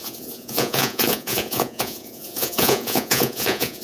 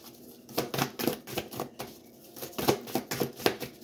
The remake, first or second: first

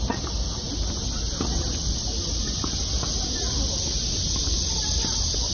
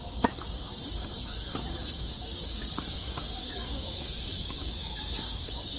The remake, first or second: second